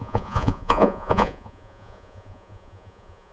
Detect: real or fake fake